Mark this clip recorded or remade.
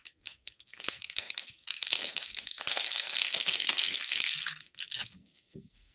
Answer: remade